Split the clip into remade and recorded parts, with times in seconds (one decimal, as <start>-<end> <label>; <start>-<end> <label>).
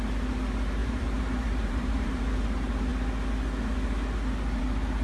0.0-0.8 recorded; 0.8-2.4 remade; 2.4-5.0 recorded